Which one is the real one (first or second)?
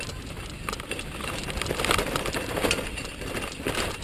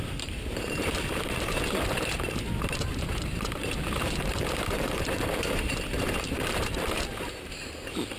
first